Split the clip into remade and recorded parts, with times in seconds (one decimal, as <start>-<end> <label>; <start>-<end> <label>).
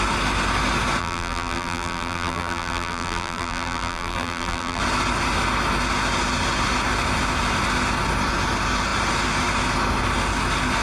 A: 0.0-1.0 recorded; 1.0-4.8 remade; 4.8-10.8 recorded